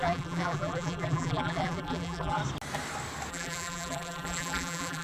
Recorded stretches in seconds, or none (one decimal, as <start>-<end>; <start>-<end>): 2.4-3.3